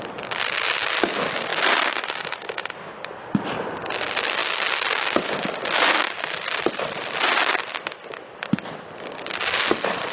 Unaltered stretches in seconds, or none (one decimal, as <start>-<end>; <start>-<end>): 0.0-10.1